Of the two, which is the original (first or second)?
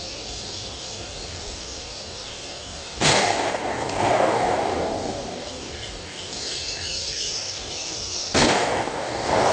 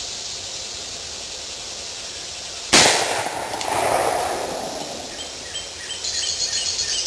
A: second